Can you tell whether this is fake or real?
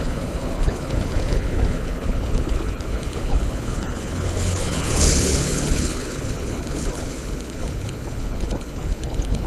fake